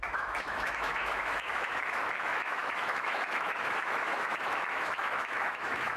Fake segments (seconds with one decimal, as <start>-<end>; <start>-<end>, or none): 0.0-6.0